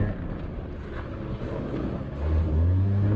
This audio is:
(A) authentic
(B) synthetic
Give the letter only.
A